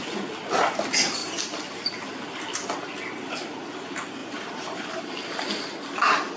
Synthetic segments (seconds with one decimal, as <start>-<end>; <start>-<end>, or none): 4.2-4.9